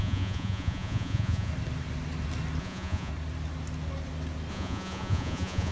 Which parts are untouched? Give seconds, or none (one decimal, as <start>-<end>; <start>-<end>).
1.5-2.6; 3.1-4.5